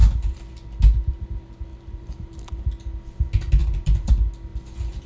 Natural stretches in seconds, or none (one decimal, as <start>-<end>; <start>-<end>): 0.0-1.7; 2.7-3.6; 4.1-4.5